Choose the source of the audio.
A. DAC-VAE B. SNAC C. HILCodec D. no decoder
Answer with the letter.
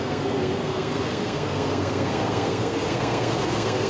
B